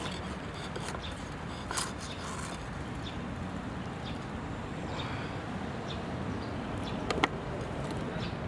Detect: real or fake real